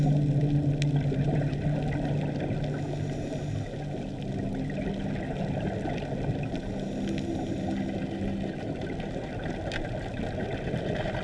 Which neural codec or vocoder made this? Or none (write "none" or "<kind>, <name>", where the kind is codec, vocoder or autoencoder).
none